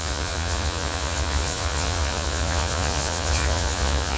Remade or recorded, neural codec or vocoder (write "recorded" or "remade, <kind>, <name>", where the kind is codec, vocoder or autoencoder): remade, vocoder, Vocos